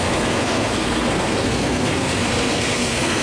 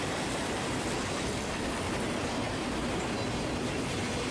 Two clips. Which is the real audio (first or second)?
second